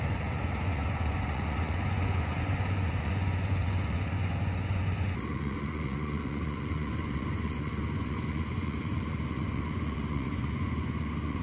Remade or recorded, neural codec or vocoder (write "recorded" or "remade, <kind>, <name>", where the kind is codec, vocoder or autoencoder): remade, vocoder, Vocos